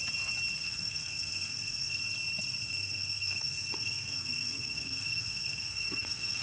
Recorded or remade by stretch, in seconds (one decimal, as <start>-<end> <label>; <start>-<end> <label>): 0.0-0.6 recorded; 0.6-2.0 remade; 2.0-2.6 recorded; 2.6-6.4 remade